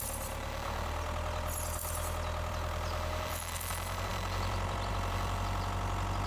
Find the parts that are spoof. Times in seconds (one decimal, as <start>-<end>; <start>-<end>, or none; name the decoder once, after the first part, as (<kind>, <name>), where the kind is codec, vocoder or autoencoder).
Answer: 0.0-1.8 (vocoder, BigVGAN v2); 2.5-6.3